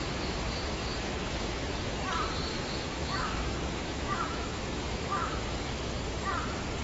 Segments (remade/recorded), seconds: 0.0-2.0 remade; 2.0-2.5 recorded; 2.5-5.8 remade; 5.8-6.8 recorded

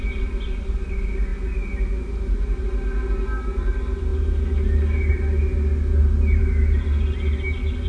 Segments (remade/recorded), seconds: 0.0-7.9 recorded